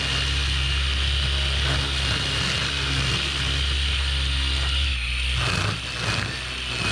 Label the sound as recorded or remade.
recorded